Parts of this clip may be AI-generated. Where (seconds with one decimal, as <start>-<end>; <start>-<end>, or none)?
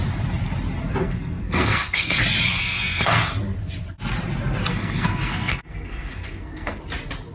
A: 1.0-2.2; 2.6-3.3; 4.7-6.8